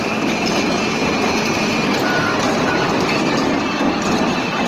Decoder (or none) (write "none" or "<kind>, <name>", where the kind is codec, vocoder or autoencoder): none